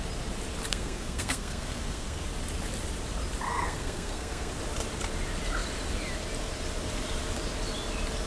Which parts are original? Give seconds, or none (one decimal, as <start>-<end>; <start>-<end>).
0.0-0.7; 2.2-3.5; 4.5-8.3